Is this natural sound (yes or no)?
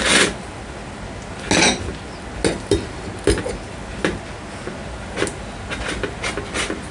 yes